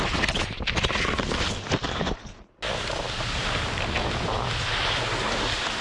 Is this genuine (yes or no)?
yes